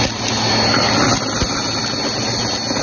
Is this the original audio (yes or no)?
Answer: yes